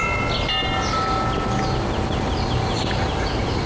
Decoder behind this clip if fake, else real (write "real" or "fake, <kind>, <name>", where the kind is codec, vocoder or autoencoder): real